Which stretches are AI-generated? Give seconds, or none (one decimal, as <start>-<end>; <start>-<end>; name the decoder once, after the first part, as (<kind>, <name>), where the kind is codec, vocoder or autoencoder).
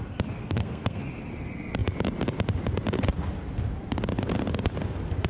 0.4-1.0 (codec, SNAC)